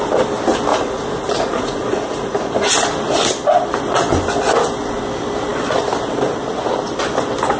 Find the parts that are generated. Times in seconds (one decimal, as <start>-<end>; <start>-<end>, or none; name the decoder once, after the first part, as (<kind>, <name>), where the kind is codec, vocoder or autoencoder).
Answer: 0.7-2.7 (vocoder, Vocos)